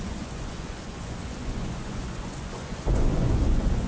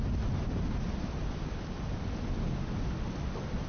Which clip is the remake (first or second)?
first